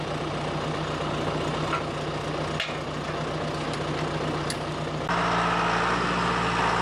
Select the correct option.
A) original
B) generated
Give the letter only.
A